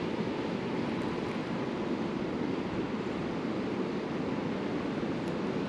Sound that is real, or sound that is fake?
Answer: real